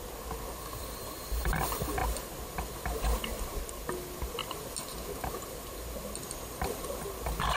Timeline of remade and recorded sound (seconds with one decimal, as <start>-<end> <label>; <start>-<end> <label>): 0.0-0.8 recorded; 0.8-1.5 remade; 1.5-7.6 recorded